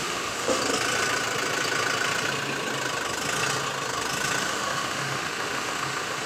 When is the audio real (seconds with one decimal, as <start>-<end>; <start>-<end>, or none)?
0.6-4.4